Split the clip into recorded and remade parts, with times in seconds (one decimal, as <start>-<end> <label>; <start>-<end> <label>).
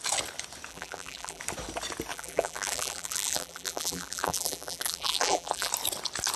0.0-0.7 recorded; 0.7-1.4 remade; 1.4-2.1 recorded; 2.1-5.7 remade; 5.7-6.4 recorded